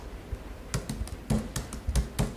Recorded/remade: recorded